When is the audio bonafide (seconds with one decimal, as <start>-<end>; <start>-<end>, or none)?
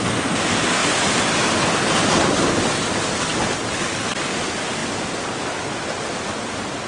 0.0-6.9